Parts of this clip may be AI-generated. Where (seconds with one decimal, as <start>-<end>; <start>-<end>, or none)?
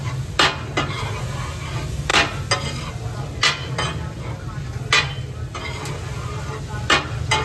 none